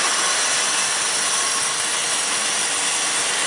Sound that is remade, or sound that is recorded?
recorded